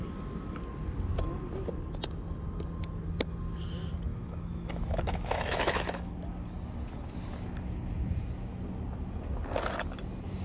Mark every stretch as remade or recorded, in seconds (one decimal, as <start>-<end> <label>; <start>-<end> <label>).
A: 0.0-4.1 recorded; 4.1-6.1 remade; 6.1-10.4 recorded